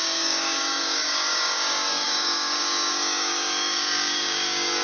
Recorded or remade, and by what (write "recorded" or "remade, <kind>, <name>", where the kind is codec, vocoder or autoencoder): remade, codec, DAC